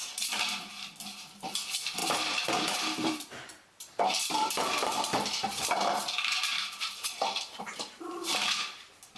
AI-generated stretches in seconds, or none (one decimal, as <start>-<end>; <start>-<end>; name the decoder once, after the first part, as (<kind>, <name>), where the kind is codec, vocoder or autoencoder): 2.0-7.1 (vocoder, BigVGAN v2)